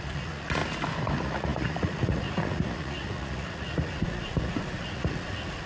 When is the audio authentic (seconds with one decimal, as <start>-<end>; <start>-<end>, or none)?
0.6-1.1